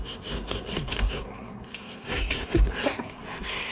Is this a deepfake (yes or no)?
yes